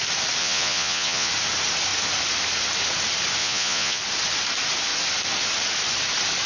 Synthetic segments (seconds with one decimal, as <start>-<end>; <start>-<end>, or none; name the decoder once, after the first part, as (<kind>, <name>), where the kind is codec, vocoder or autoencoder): 0.4-1.3 (vocoder, Vocos); 3.4-4.0